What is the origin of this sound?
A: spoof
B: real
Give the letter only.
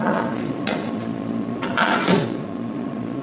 A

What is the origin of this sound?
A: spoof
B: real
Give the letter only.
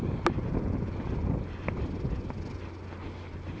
B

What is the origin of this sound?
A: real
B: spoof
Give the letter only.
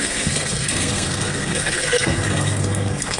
B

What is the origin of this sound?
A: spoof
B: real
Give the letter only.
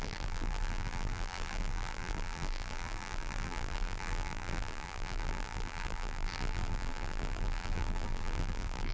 A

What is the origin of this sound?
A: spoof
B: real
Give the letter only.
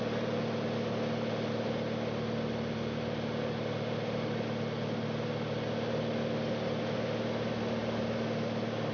B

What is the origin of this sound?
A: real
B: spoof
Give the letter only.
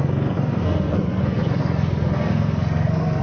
B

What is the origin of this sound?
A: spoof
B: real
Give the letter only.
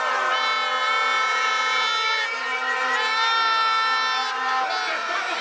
B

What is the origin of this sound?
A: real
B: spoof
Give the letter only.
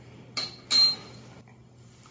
A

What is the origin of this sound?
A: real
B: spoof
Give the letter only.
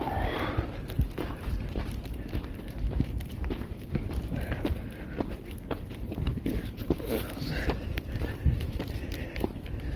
B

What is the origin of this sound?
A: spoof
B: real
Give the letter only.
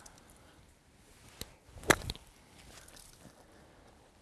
B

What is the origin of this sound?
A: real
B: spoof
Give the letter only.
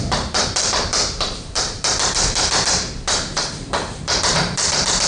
B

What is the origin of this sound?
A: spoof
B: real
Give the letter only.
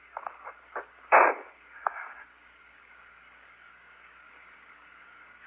A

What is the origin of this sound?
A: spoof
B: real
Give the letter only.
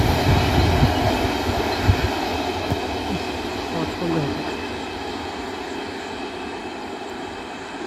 B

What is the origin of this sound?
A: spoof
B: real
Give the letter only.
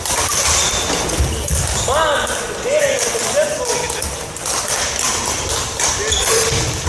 B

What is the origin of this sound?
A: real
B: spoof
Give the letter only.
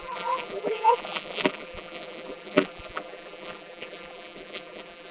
B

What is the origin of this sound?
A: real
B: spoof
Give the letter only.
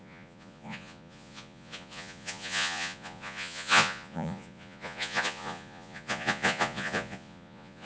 B